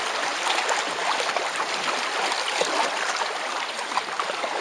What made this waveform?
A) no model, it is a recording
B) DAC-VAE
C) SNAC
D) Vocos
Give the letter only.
A